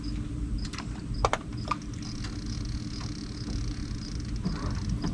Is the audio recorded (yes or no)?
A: yes